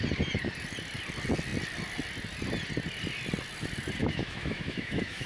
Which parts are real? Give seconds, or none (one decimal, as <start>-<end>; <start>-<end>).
0.0-4.0